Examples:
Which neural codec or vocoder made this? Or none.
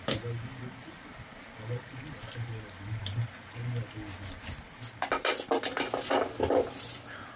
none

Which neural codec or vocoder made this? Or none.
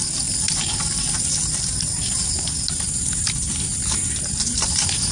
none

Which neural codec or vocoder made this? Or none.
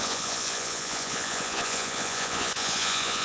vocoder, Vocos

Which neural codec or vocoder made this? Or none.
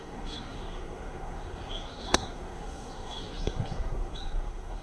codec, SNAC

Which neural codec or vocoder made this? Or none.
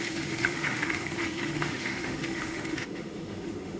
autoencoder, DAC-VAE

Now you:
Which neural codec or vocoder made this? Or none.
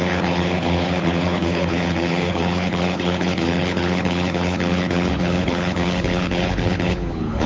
codec, HILCodec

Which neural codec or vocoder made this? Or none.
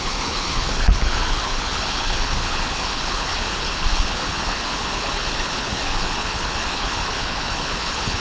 codec, HILCodec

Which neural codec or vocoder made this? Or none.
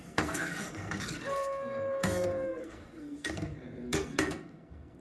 codec, SNAC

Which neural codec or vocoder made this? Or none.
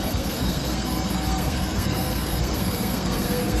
codec, SNAC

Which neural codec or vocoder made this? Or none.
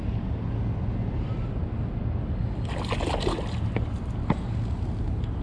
none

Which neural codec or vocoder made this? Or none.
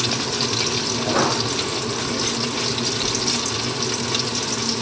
none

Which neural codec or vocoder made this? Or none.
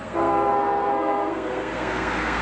codec, SNAC